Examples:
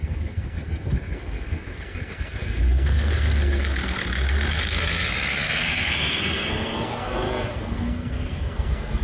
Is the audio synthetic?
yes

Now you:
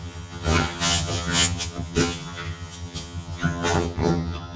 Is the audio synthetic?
yes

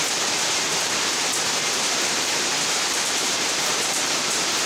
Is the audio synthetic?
yes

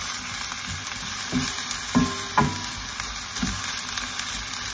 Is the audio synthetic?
no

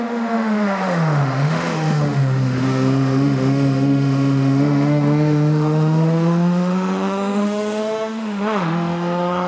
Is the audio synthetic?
yes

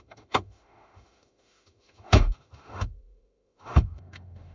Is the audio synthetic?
yes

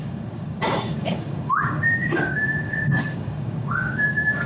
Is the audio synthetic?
yes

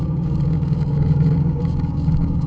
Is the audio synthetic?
yes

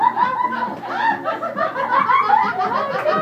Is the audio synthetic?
no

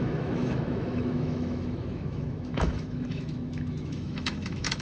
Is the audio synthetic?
yes